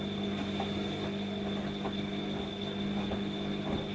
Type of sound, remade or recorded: recorded